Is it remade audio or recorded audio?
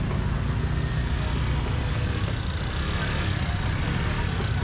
recorded